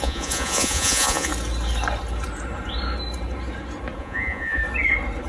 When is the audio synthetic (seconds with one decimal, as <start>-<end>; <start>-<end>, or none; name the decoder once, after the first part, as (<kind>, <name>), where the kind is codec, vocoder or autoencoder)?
0.0-1.3 (vocoder, Vocos); 4.0-4.6